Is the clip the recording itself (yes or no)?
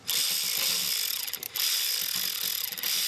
no